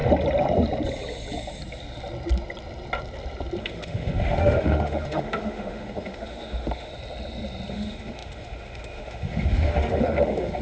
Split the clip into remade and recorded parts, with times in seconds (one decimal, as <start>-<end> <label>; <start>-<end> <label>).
0.0-3.6 recorded; 3.6-6.9 remade; 6.9-7.7 recorded; 7.7-10.6 remade